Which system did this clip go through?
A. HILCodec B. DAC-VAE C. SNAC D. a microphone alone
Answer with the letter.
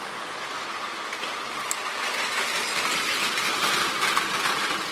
D